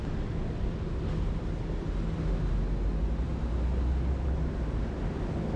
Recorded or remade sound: recorded